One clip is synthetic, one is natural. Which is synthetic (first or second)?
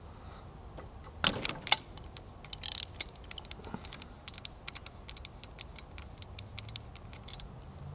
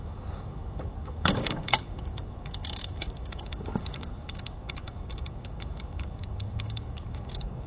second